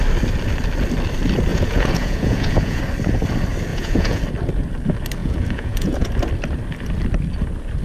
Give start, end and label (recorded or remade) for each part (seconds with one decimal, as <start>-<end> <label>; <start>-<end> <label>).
0.0-1.5 recorded; 1.5-2.8 remade; 2.8-3.7 recorded; 3.7-4.2 remade; 4.2-5.2 recorded; 5.2-6.1 remade; 6.1-7.8 recorded